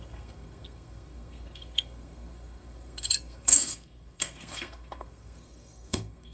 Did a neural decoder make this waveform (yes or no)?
yes